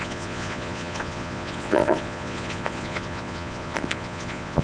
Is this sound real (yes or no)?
no